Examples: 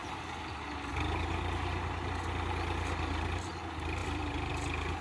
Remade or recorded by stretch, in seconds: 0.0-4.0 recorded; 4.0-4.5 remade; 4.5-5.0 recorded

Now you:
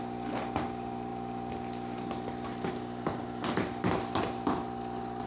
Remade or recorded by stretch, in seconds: 0.0-1.1 recorded; 1.1-3.4 remade; 3.4-5.3 recorded

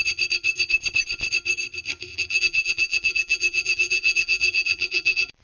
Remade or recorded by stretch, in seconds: 0.0-2.1 recorded; 2.1-5.4 remade

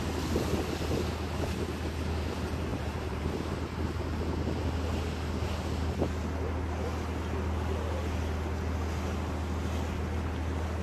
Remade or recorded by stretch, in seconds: 0.0-2.7 recorded; 2.7-3.6 remade; 3.6-10.8 recorded

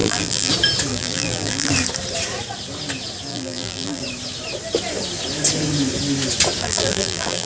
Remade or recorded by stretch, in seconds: 0.0-0.5 remade; 0.5-0.9 recorded; 0.9-1.7 remade; 1.7-3.3 recorded; 3.3-4.0 remade; 4.0-6.6 recorded; 6.6-7.5 remade

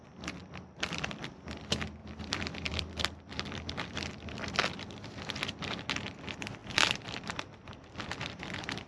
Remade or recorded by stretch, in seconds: 0.0-0.4 recorded; 0.4-1.2 remade; 1.2-2.0 recorded; 2.0-5.9 remade; 5.9-6.6 recorded; 6.6-8.4 remade; 8.4-8.9 recorded